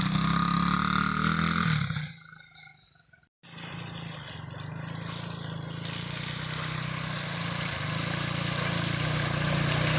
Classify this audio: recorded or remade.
recorded